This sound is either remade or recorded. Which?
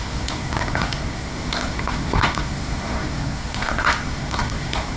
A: remade